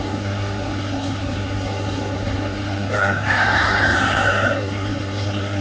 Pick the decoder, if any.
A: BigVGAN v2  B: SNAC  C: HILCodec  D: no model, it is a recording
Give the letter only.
B